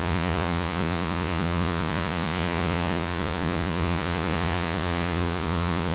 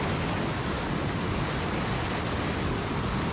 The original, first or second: second